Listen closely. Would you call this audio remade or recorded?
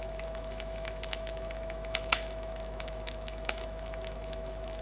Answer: remade